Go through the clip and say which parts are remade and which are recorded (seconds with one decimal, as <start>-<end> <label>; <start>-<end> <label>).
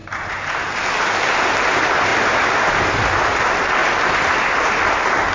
0.0-5.3 recorded